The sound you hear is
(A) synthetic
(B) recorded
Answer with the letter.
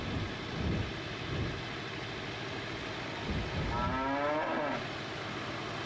B